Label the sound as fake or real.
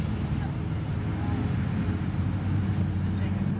real